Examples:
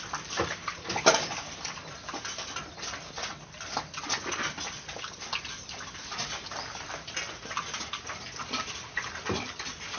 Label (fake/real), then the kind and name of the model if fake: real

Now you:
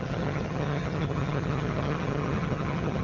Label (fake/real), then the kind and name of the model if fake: fake, vocoder, HiFi-GAN